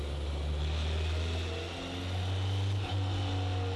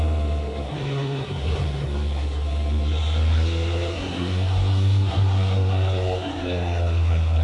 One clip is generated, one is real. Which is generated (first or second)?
second